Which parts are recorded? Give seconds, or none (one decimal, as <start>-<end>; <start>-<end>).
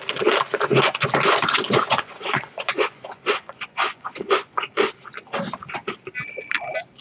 0.0-0.5; 4.7-7.0